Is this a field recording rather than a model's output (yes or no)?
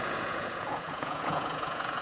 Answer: no